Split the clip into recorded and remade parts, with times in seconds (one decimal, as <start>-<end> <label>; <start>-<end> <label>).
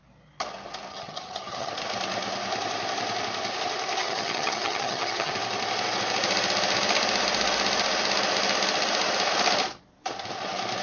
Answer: 0.0-0.9 recorded; 0.9-1.7 remade; 1.7-4.0 recorded; 4.0-5.3 remade; 5.3-10.8 recorded